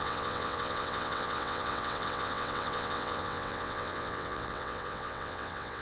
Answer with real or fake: fake